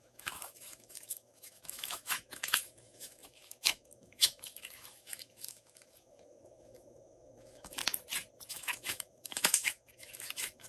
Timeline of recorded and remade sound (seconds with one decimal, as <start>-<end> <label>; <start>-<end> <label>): 0.0-7.8 remade; 7.8-8.5 recorded; 8.5-10.7 remade